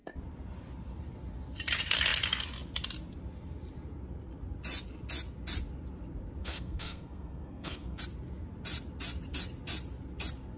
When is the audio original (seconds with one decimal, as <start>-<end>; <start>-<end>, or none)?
0.0-6.4; 8.0-10.6